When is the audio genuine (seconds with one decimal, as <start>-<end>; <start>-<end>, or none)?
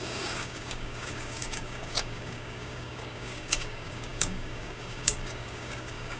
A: none